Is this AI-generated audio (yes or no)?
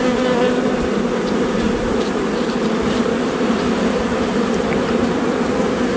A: yes